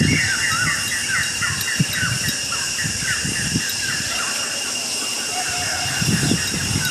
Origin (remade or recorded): recorded